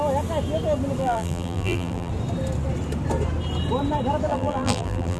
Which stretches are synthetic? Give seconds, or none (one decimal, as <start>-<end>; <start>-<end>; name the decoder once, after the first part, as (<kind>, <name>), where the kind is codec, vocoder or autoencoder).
1.0-2.1 (vocoder, BigVGAN v2); 4.3-5.2